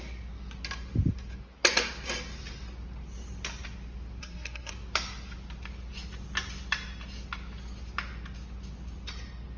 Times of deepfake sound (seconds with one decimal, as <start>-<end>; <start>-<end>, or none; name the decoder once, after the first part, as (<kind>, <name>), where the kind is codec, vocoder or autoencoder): 4.2-4.7 (codec, SNAC)

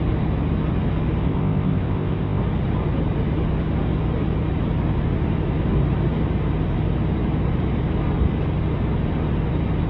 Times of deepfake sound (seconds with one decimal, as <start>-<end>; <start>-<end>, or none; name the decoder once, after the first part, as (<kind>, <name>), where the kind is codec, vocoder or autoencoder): 1.2-2.4 (codec, ZipCodec)

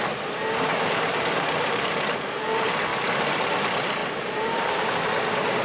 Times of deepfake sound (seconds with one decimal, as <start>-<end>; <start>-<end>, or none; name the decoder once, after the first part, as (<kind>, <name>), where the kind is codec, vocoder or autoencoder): 0.7-2.4 (vocoder, BigVGAN v2); 4.0-4.9

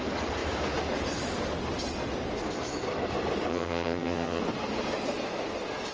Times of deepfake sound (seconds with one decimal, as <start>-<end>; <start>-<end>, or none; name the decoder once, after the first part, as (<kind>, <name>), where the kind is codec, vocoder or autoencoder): 3.5-4.4 (vocoder, HiFi-GAN)

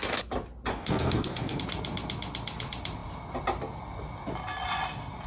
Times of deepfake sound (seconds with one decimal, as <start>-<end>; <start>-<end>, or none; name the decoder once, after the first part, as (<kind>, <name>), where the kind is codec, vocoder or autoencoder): 0.7-1.6 (codec, DAC)